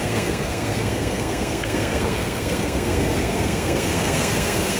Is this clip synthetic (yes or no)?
yes